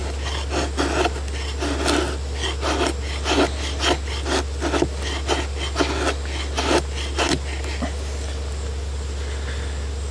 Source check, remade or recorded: recorded